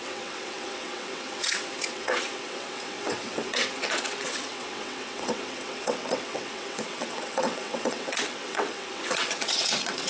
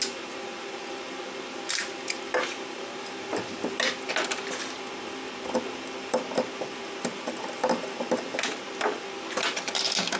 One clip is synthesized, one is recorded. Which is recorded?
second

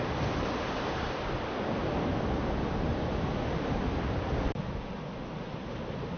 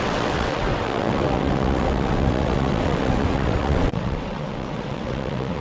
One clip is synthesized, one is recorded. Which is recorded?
first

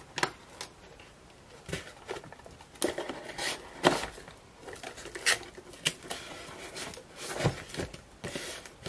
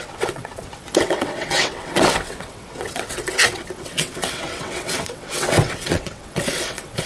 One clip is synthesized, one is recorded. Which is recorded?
first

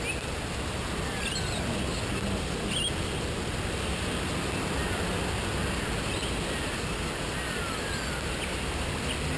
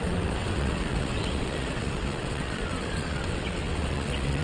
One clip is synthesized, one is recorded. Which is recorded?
first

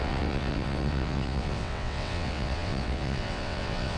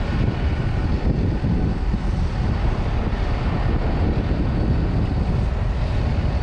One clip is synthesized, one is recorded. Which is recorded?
second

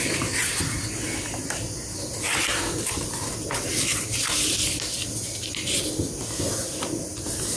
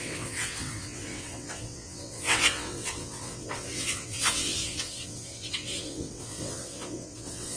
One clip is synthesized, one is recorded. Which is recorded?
first